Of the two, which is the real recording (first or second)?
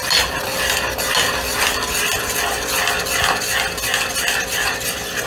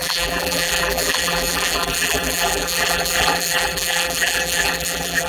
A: first